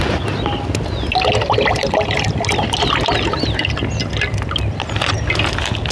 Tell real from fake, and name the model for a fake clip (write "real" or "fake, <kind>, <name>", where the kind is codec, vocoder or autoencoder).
real